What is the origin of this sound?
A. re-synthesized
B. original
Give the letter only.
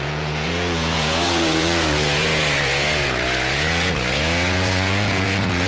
A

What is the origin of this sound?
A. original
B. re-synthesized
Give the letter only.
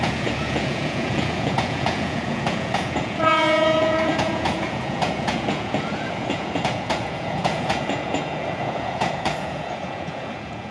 B